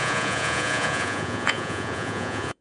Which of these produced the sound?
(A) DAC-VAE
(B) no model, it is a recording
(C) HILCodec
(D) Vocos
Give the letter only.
D